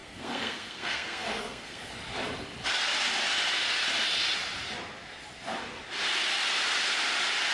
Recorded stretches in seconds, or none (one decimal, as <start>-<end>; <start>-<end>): 1.9-7.5